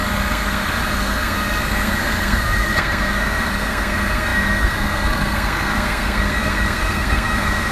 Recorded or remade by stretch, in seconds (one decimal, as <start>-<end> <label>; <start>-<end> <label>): 0.0-7.7 remade